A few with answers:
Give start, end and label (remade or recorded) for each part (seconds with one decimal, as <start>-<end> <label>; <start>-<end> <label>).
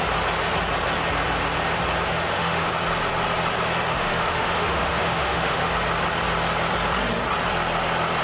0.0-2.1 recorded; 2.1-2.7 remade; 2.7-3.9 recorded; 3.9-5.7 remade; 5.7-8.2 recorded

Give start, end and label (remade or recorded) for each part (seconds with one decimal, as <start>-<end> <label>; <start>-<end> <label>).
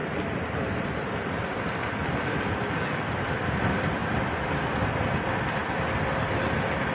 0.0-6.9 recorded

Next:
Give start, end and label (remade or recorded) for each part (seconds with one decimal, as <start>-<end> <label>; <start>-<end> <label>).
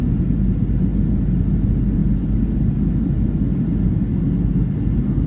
0.0-5.3 recorded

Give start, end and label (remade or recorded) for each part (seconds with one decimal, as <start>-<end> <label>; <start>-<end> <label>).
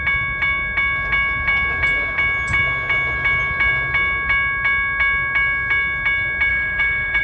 0.0-6.5 recorded; 6.5-7.2 remade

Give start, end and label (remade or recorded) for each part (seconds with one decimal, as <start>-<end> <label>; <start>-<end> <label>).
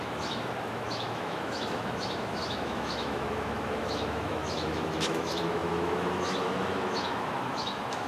0.0-8.1 remade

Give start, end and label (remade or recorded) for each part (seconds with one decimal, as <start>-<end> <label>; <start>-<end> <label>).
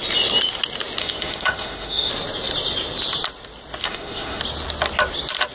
0.0-1.0 recorded; 1.0-2.1 remade; 2.1-3.8 recorded; 3.8-4.4 remade; 4.4-5.5 recorded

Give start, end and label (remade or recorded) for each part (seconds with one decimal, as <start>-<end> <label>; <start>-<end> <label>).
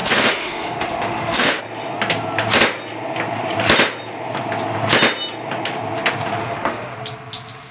0.0-1.6 remade; 1.6-6.4 recorded; 6.4-6.9 remade; 6.9-7.7 recorded